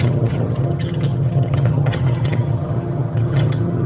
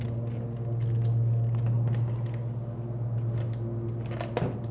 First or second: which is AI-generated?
first